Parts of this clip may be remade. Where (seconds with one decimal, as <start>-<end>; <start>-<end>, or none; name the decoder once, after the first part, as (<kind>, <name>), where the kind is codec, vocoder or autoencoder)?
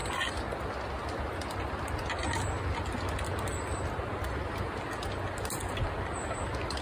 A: none